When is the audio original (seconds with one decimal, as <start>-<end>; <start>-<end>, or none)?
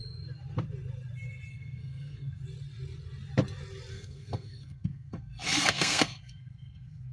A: 0.0-1.5; 2.4-3.9